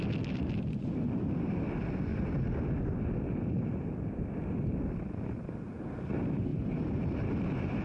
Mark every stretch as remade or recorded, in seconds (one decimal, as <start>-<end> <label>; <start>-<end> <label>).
0.0-6.5 recorded; 6.5-7.8 remade